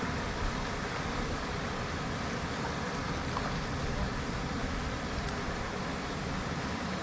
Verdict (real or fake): real